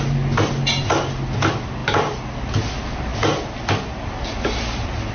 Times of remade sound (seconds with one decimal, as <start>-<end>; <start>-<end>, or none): none